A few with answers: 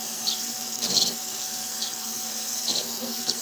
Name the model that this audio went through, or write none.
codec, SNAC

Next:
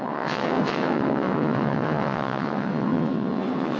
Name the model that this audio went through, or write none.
vocoder, WaveNeXt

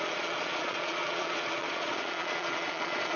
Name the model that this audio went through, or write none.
vocoder, Vocos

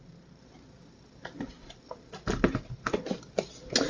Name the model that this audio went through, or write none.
none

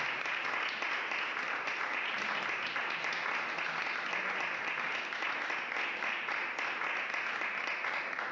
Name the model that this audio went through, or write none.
none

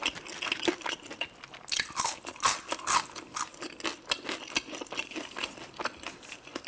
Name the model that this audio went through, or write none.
none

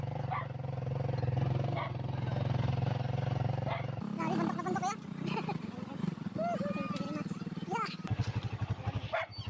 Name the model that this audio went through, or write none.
none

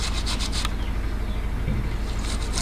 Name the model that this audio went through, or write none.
none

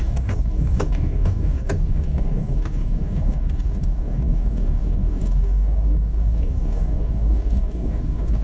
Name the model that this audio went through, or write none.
codec, DAC